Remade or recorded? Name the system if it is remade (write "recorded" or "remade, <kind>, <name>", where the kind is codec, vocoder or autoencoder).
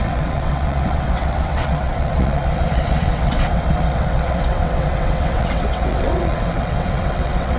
remade, vocoder, WaveNeXt